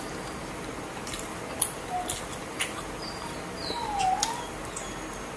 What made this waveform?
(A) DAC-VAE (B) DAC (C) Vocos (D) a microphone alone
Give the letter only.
D